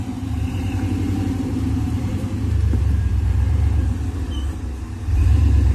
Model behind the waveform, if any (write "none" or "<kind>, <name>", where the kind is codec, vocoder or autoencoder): vocoder, BigVGAN v2